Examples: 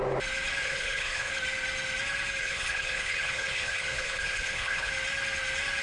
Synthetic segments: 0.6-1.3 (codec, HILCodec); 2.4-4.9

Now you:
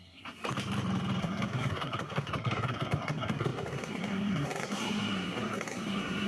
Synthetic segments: 0.0-0.4 (codec, SNAC); 1.2-6.3

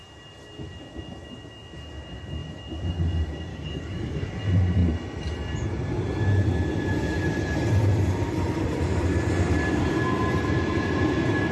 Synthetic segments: 3.5-4.3 (codec, DAC)

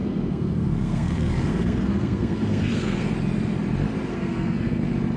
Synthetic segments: 0.0-3.1 (codec, SNAC); 4.1-4.8

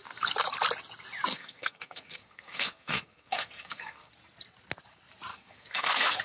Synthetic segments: 1.3-4.1 (codec, SNAC); 5.3-6.2

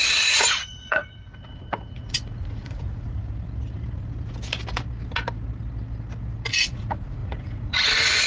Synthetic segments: 0.0-3.2 (vocoder, Vocos); 6.5-8.3

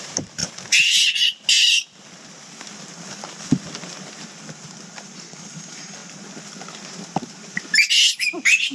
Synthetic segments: 0.0-0.4 (vocoder, BigVGAN v2); 5.4-6.0; 8.1-8.7